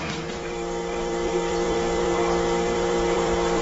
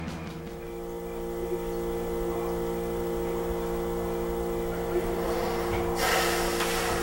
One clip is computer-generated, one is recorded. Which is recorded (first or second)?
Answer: second